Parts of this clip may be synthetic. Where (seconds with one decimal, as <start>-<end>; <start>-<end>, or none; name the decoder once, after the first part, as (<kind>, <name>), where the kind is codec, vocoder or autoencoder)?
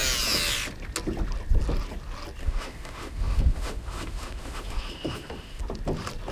2.4-5.6 (autoencoder, DAC-VAE)